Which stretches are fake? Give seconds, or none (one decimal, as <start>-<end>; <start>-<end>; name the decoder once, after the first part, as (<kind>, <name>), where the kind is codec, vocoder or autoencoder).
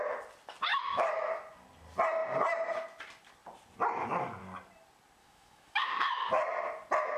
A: 0.7-1.3 (autoencoder, DAC-VAE); 5.2-6.3